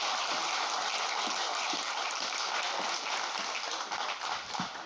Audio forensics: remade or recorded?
recorded